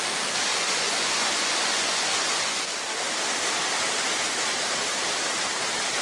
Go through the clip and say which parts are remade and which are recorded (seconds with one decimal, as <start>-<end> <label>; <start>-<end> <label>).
0.0-0.5 recorded; 0.5-2.8 remade; 2.8-6.0 recorded